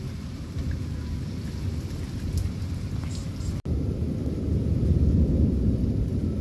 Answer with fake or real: real